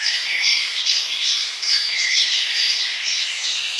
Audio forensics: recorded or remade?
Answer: remade